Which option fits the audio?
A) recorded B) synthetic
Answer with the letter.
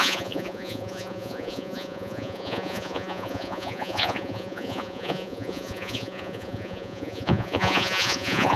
B